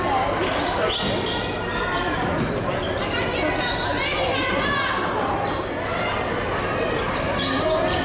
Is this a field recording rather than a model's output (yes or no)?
yes